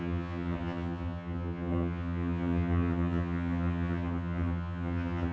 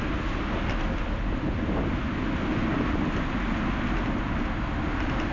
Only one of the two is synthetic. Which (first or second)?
first